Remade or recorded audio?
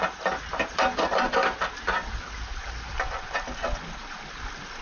recorded